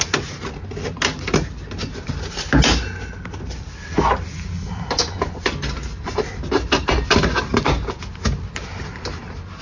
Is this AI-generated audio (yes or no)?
no